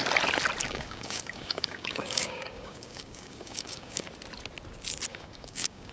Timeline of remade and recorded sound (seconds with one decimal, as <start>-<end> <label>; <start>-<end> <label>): 0.0-0.6 recorded; 0.6-4.1 remade; 4.1-5.1 recorded; 5.1-5.9 remade